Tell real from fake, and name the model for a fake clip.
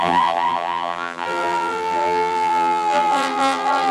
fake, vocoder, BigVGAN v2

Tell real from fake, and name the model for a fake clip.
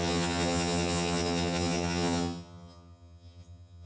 fake, vocoder, HiFi-GAN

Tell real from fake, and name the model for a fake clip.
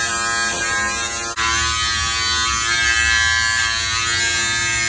real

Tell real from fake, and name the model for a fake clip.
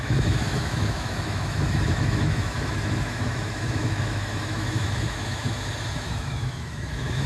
fake, autoencoder, DAC-VAE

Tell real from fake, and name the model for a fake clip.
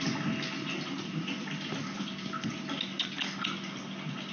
real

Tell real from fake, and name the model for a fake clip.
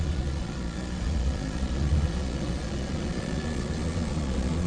fake, vocoder, Vocos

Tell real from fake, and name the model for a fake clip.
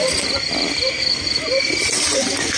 real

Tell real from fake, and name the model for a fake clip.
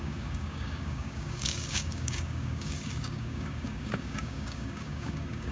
fake, codec, DAC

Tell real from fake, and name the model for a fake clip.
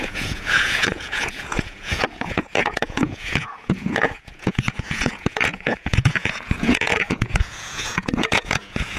fake, vocoder, Vocos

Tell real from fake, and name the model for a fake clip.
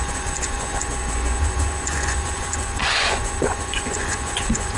fake, vocoder, Vocos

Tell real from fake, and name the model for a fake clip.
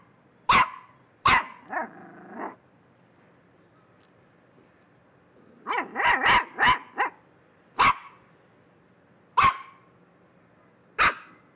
real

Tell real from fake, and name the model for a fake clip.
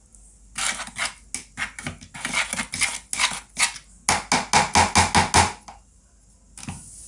real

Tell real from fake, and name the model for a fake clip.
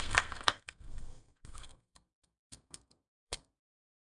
fake, codec, SNAC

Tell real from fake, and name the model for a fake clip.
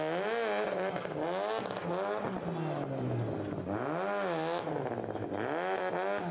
real